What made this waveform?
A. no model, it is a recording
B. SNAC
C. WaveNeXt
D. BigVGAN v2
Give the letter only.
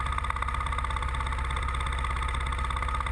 A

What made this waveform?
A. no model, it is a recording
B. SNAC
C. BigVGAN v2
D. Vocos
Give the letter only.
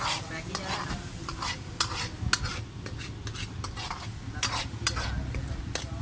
A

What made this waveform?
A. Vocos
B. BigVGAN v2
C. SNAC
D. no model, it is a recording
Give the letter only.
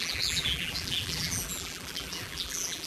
B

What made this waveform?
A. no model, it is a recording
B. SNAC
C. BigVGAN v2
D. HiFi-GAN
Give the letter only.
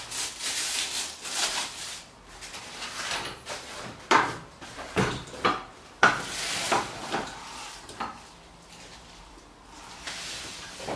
C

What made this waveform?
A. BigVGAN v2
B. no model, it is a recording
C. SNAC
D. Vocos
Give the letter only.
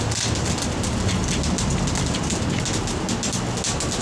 B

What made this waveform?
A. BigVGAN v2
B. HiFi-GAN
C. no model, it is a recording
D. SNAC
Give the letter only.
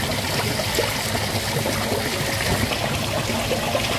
C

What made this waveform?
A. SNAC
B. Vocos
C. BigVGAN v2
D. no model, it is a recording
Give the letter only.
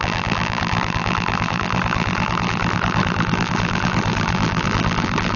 C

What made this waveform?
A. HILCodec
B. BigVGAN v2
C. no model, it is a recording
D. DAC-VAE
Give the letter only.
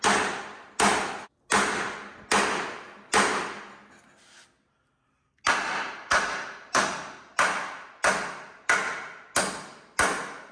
C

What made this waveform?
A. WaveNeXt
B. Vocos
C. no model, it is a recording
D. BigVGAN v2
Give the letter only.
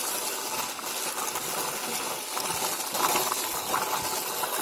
C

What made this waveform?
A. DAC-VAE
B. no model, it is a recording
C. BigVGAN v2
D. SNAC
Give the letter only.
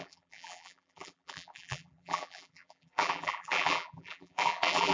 C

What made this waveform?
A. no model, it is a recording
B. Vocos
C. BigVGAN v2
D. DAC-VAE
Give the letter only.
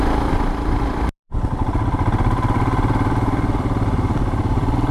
C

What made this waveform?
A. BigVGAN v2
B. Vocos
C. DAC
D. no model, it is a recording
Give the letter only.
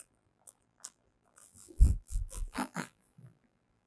A